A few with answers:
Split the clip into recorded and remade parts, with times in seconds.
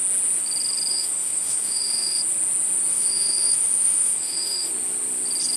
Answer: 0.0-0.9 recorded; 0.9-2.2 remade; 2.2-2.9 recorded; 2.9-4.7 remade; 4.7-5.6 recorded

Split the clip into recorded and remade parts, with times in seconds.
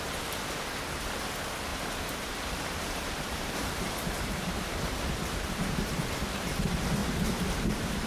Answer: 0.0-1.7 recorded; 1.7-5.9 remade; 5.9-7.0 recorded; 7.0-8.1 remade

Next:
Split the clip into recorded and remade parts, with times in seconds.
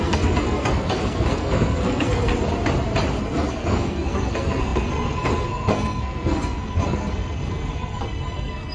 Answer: 0.0-2.3 remade; 2.3-3.2 recorded; 3.2-8.7 remade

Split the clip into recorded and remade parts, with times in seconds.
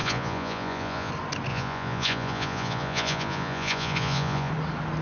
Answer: 0.0-1.1 remade; 1.1-1.5 recorded; 1.5-4.5 remade; 4.5-5.0 recorded